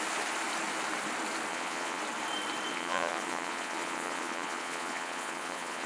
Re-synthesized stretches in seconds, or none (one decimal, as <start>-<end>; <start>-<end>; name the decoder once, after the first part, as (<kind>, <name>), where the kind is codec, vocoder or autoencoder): 1.5-2.0 (vocoder, Vocos); 2.7-5.9